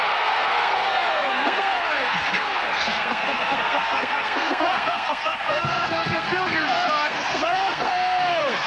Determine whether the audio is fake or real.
fake